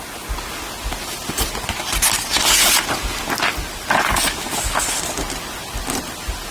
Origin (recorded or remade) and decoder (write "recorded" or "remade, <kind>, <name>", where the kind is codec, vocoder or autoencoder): recorded